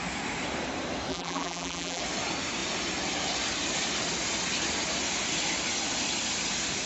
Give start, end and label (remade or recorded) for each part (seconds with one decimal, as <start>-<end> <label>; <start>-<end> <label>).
0.0-1.1 recorded; 1.1-2.0 remade; 2.0-6.9 recorded